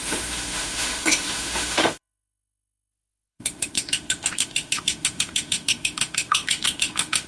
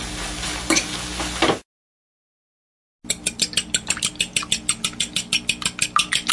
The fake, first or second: first